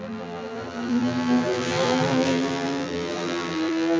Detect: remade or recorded remade